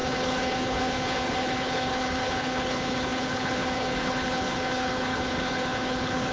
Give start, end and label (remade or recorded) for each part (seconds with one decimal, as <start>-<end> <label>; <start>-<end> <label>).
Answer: 0.0-6.3 remade